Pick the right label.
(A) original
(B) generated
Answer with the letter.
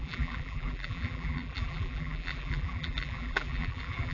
B